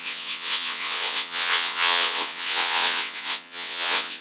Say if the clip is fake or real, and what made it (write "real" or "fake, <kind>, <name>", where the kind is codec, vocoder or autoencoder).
fake, vocoder, WaveNeXt